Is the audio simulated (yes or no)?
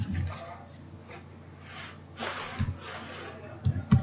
no